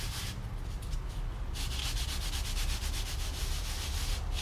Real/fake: real